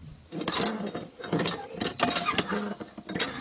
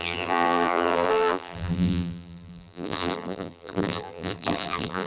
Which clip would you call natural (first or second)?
first